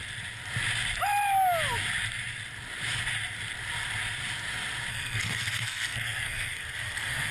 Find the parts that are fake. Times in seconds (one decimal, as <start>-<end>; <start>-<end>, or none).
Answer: 4.9-7.3